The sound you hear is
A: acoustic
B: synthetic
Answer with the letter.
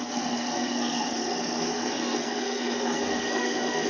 B